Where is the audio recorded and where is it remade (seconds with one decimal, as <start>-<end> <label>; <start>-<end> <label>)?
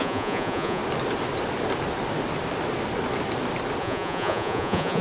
0.0-0.8 remade; 0.8-3.8 recorded; 3.8-5.0 remade